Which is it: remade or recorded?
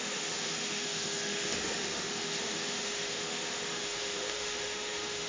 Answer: remade